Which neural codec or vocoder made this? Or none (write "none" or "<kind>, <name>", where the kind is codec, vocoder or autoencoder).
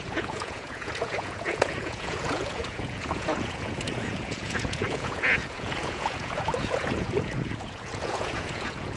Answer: vocoder, Vocos